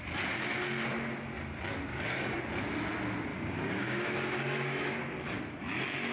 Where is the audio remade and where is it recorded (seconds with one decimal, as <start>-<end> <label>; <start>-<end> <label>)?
0.0-1.9 recorded; 1.9-2.4 remade; 2.4-3.3 recorded; 3.3-5.4 remade; 5.4-6.1 recorded